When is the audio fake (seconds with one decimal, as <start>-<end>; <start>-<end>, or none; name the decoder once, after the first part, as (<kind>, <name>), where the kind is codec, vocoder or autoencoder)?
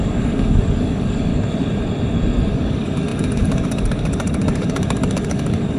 0.0-1.3 (codec, DAC); 2.5-5.8